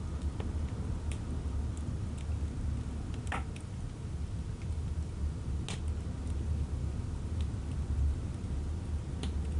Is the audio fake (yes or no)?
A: no